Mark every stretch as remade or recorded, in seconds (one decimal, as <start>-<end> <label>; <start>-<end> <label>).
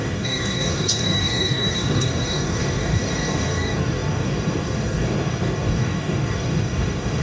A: 0.0-7.2 remade